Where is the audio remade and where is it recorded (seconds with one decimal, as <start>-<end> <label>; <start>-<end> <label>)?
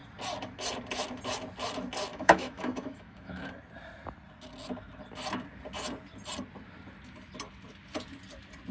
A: 0.0-2.1 recorded; 2.1-3.5 remade; 3.5-8.7 recorded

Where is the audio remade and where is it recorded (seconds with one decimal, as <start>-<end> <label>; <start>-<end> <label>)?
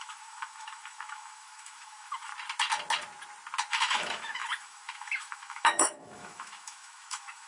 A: 0.0-2.3 remade; 2.3-3.7 recorded; 3.7-7.5 remade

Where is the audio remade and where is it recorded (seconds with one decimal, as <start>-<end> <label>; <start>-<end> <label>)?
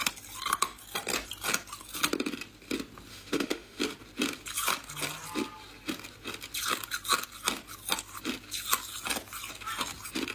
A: 0.0-3.1 recorded; 3.1-3.8 remade; 3.8-10.3 recorded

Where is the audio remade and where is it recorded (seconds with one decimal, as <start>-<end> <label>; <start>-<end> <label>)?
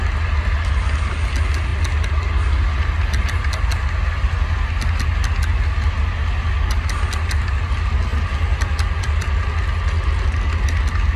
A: 0.0-11.2 recorded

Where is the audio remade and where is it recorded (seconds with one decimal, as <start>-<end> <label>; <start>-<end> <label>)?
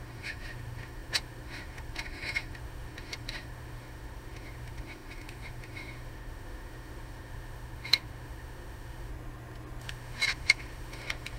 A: 0.0-9.1 remade; 9.1-9.8 recorded; 9.8-11.4 remade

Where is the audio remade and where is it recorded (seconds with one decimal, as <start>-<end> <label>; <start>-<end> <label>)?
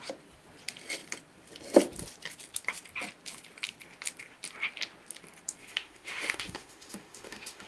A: 0.0-5.6 recorded; 5.6-7.7 remade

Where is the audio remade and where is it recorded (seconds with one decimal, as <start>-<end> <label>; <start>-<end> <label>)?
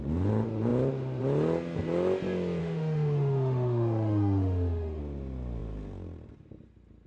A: 0.0-2.6 recorded; 2.6-5.0 remade; 5.0-7.1 recorded